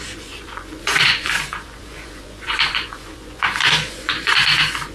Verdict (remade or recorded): remade